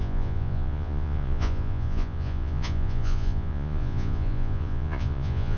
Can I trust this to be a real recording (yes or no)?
no